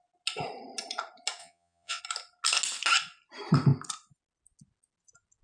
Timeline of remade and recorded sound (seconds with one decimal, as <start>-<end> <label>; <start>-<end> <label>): 0.0-1.4 recorded; 1.4-2.0 remade; 2.0-5.4 recorded